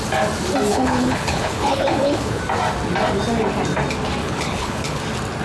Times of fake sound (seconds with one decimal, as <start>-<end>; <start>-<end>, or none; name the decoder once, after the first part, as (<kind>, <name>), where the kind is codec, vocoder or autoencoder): 0.7-2.4 (codec, HILCodec); 4.2-5.0